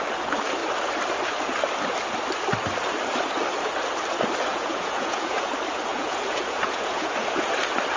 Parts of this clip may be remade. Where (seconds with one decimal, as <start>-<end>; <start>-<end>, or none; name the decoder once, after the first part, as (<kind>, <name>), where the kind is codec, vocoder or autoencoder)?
4.5-5.5 (vocoder, Vocos); 5.9-7.5